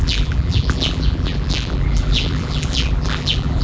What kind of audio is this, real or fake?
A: fake